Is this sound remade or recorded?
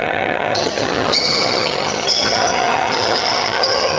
remade